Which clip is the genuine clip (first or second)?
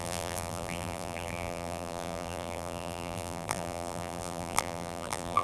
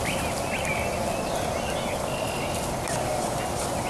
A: second